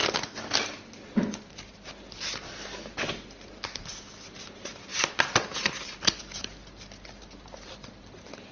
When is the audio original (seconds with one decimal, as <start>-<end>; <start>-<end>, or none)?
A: 0.0-8.5